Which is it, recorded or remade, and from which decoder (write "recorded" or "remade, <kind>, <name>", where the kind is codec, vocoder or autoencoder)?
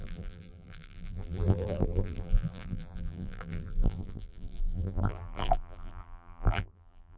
remade, vocoder, BigVGAN v2